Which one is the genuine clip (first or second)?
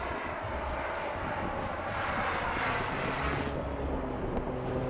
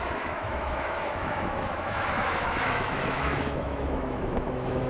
first